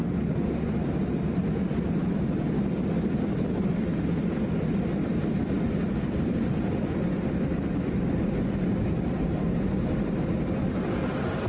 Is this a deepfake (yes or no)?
no